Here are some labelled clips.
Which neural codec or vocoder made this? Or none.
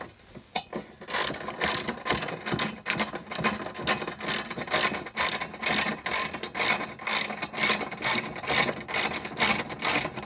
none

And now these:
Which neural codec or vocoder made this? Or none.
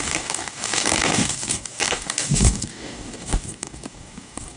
codec, DAC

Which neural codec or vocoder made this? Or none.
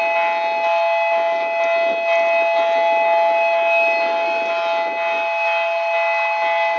none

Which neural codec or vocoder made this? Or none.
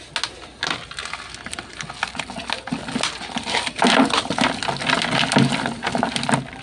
none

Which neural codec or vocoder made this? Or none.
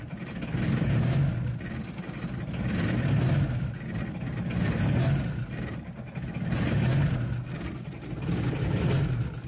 none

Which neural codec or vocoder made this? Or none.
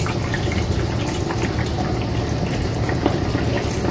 none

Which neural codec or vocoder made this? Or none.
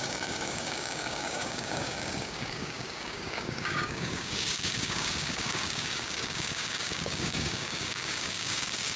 codec, DAC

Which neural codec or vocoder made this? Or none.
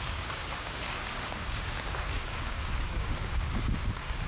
codec, DAC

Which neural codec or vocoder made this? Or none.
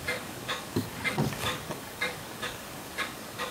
codec, DAC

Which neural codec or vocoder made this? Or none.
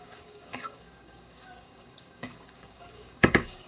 codec, DAC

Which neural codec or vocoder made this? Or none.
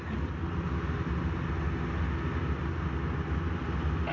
none